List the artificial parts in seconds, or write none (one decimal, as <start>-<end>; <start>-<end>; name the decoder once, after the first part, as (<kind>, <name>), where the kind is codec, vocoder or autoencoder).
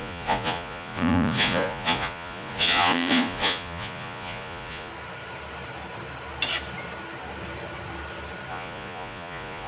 0.0-4.9 (vocoder, Vocos); 8.5-9.7